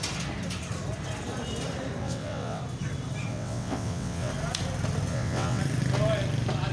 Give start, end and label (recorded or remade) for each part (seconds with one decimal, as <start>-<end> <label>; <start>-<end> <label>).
0.0-2.0 recorded; 2.0-2.6 remade; 2.6-3.3 recorded; 3.3-4.3 remade; 4.3-5.1 recorded; 5.1-5.6 remade; 5.6-6.7 recorded